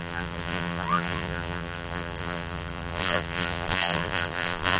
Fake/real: fake